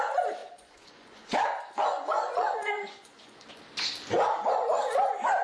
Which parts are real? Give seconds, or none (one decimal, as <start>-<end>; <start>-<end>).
0.0-0.4; 3.6-5.4